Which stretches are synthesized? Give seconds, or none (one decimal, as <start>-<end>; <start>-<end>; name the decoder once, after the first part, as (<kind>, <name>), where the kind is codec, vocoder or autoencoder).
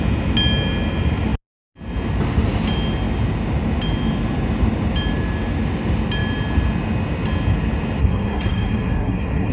8.0-9.5 (codec, SNAC)